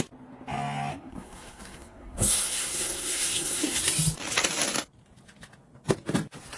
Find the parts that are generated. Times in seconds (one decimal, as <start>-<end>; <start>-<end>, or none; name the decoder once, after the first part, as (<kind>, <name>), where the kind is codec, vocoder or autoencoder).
0.9-3.8 (codec, SNAC)